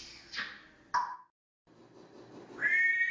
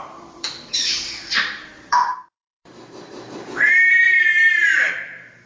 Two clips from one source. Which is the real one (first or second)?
first